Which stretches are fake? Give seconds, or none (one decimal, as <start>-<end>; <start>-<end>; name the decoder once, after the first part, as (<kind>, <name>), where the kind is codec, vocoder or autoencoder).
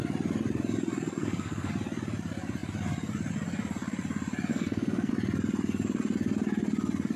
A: 1.2-1.7 (codec, SNAC); 4.5-5.1